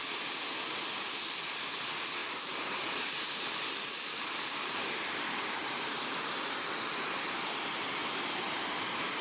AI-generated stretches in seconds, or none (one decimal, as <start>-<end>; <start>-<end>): 2.2-6.9; 8.5-9.2